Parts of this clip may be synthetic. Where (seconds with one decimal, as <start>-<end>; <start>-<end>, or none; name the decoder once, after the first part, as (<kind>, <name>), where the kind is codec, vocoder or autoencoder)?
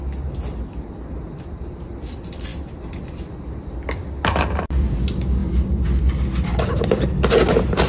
none